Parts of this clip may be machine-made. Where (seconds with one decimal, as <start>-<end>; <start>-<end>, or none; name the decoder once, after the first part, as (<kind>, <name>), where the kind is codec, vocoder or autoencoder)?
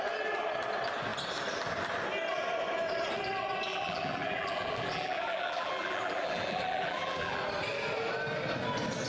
3.7-7.4 (vocoder, BigVGAN v2)